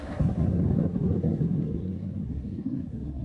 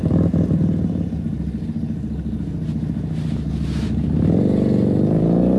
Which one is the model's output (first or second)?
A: first